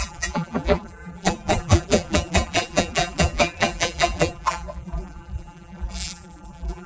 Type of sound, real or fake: fake